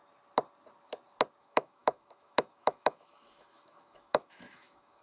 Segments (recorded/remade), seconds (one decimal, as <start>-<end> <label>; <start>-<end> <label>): 0.0-1.4 recorded; 1.4-5.0 remade